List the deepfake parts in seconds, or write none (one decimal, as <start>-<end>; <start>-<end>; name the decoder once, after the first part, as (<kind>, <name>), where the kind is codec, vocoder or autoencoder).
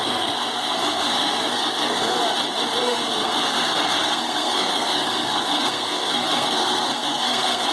0.0-2.2 (codec, SNAC); 2.8-7.7